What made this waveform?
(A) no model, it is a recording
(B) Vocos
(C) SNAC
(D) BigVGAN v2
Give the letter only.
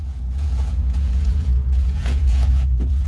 B